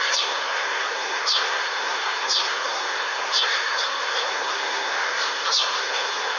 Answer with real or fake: fake